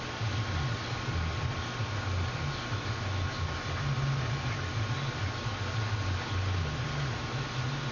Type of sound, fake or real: real